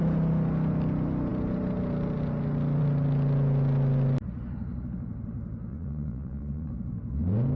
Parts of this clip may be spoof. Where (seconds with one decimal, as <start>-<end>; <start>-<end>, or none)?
5.7-6.7